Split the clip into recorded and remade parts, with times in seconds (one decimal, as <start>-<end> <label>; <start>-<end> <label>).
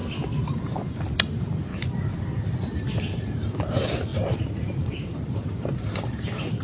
0.0-0.6 recorded; 0.6-1.7 remade; 1.7-3.3 recorded; 3.3-6.6 remade